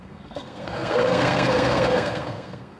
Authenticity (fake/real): fake